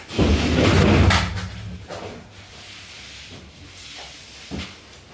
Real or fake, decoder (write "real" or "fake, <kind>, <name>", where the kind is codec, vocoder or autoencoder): real